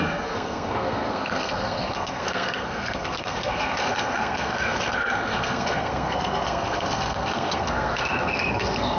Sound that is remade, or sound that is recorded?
remade